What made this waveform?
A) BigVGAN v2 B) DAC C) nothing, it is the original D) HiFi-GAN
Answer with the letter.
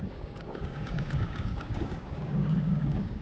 B